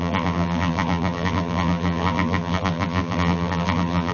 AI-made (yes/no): yes